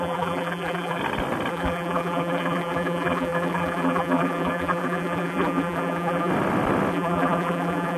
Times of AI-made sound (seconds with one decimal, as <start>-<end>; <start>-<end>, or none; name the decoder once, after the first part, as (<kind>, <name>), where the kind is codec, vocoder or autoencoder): 0.0-1.0 (vocoder, BigVGAN v2); 1.5-6.3; 6.9-8.0